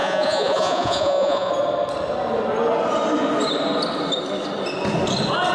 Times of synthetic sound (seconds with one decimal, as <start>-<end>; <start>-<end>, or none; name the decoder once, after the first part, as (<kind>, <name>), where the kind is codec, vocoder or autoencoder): 0.0-1.5 (vocoder, Vocos)